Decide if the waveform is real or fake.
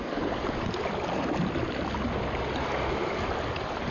real